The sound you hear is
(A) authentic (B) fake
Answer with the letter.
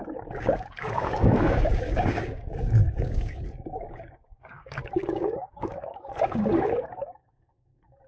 B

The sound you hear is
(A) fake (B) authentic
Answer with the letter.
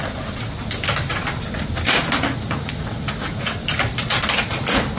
B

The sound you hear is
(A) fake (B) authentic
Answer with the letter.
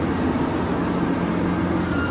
B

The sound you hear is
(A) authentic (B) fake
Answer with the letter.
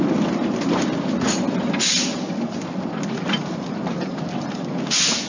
A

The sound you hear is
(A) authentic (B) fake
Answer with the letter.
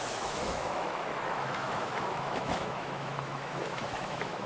B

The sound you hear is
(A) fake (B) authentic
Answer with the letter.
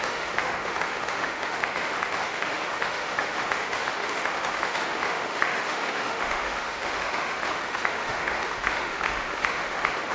A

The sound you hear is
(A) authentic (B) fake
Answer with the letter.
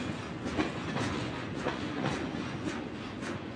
B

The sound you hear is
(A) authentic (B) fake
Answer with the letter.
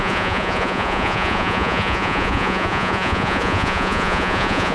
B